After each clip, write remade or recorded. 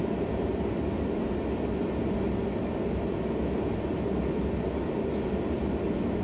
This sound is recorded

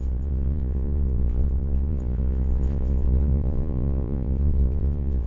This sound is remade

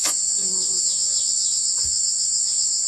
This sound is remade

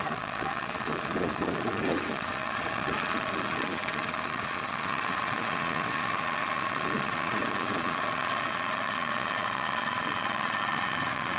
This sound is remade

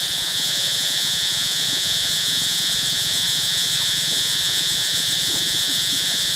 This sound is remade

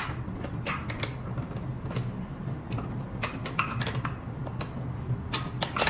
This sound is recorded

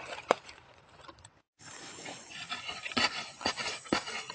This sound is remade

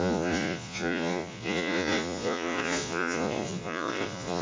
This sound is remade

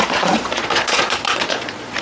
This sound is remade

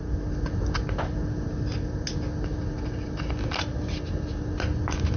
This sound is recorded